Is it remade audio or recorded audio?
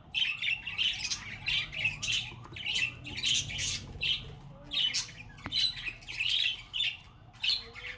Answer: recorded